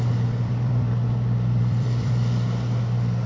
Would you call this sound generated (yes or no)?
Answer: yes